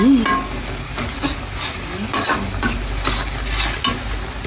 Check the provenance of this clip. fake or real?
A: real